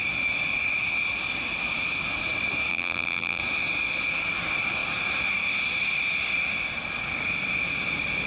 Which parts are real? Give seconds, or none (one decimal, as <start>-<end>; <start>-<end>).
0.0-2.7; 3.4-8.3